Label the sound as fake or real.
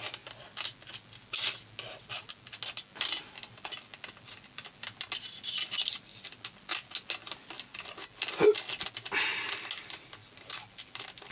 real